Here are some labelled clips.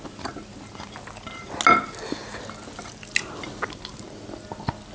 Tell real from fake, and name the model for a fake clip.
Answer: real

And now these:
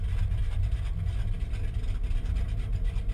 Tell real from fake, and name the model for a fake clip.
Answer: real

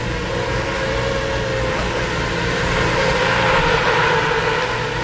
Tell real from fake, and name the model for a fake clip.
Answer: real